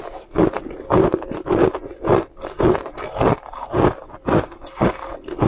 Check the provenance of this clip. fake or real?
real